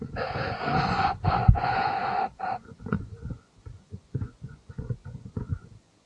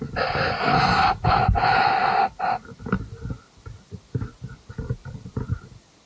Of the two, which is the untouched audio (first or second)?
second